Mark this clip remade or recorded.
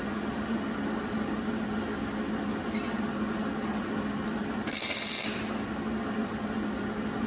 recorded